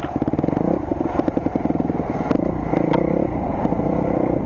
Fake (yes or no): no